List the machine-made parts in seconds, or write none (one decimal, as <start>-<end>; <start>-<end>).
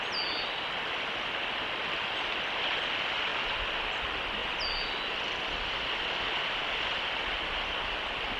none